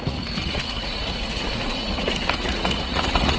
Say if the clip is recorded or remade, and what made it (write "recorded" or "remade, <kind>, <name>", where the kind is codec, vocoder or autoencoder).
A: remade, vocoder, Vocos